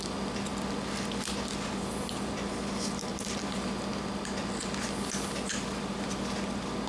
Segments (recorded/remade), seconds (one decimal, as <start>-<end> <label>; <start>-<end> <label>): 0.0-6.9 recorded